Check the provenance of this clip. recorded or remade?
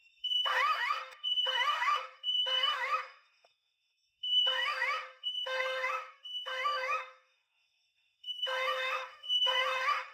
remade